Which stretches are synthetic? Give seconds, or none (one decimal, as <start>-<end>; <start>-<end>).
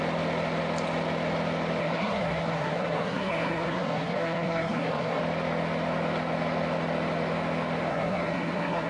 1.8-5.2; 7.9-8.9